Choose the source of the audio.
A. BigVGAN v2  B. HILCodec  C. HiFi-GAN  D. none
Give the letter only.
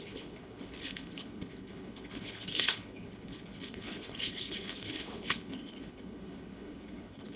B